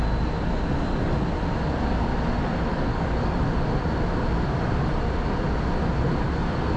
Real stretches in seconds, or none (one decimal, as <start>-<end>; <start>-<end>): 0.0-2.7; 3.3-6.8